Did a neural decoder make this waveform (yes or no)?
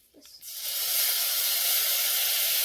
no